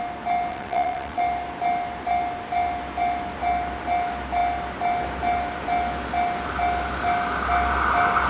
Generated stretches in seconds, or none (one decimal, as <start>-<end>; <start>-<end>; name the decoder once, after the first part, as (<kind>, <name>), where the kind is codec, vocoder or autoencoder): 0.5-1.2 (vocoder, WaveNeXt)